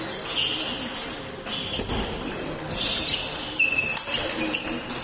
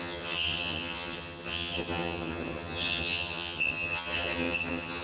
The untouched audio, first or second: first